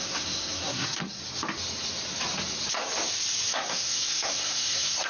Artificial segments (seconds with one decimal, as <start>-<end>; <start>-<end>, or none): 0.0-1.2; 3.5-5.1